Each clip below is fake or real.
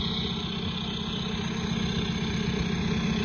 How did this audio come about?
real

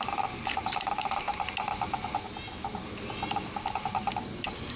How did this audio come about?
real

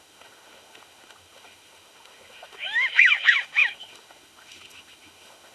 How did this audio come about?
fake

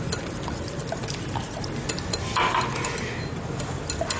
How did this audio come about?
real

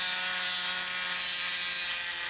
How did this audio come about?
real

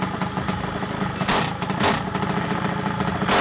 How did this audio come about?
real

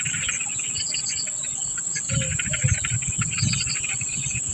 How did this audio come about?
real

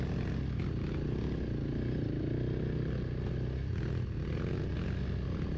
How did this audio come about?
real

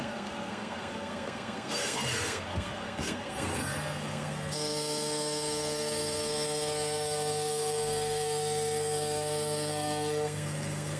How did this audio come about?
fake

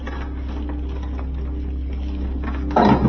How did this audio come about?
real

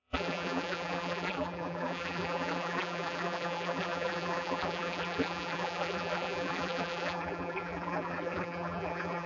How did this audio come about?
fake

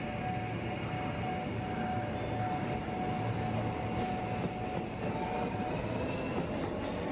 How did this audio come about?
real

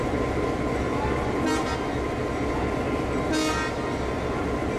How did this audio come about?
real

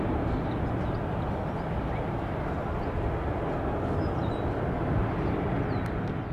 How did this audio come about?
real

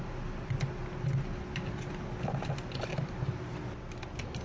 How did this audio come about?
real